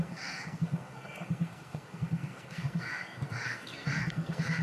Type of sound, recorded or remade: remade